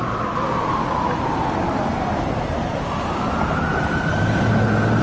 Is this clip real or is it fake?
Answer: real